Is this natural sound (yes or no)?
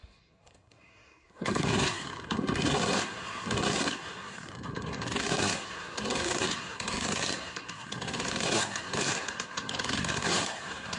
no